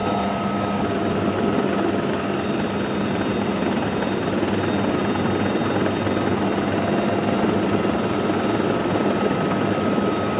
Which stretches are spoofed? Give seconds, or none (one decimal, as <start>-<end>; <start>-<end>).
0.0-1.3